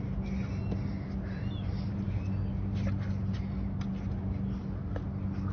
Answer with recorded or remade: recorded